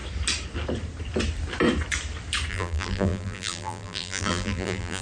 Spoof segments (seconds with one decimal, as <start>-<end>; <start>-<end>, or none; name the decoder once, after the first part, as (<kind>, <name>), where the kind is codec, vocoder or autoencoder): 2.5-5.0 (vocoder, BigVGAN v2)